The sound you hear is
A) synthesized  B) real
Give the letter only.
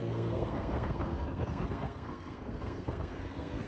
A